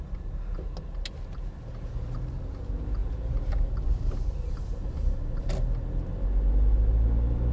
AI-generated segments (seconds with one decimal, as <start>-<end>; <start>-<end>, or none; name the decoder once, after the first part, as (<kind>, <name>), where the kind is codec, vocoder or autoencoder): none